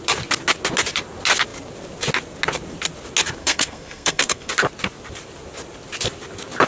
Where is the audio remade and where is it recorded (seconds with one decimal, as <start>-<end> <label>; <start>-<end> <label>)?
0.0-3.4 recorded; 3.4-4.5 remade; 4.5-6.7 recorded